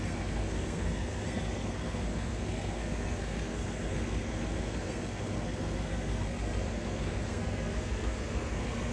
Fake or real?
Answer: fake